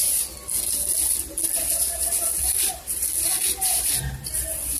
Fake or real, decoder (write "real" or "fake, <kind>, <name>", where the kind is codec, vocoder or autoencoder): real